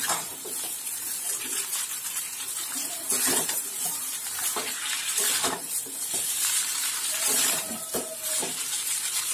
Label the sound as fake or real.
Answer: fake